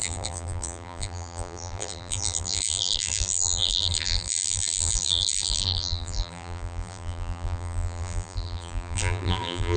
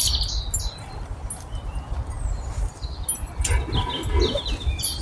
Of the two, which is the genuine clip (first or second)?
second